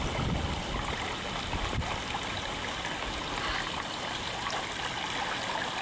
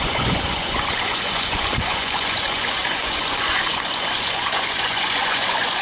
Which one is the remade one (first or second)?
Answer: second